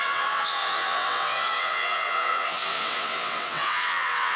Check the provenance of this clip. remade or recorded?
remade